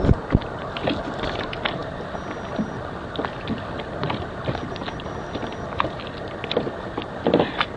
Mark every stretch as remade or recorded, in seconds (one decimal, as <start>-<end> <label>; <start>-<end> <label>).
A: 0.0-7.8 recorded